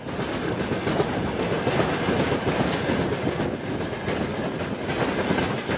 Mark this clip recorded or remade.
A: recorded